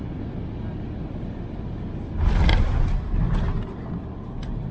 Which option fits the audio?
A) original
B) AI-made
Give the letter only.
A